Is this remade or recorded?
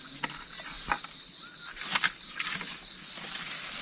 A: recorded